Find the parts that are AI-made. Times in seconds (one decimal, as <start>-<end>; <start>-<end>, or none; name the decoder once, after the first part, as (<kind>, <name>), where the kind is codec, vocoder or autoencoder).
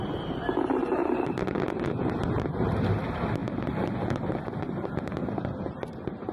0.0-6.3 (vocoder, BigVGAN v2)